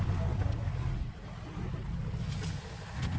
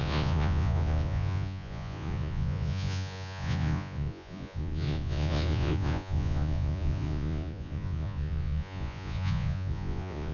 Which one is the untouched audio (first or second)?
first